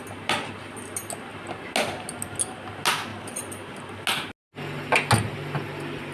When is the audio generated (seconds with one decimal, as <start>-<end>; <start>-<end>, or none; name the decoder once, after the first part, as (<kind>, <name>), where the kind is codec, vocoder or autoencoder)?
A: none